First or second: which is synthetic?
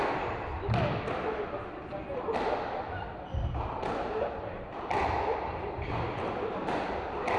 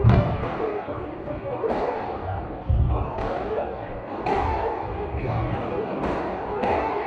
second